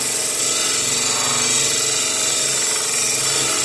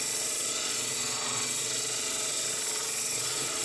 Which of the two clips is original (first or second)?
first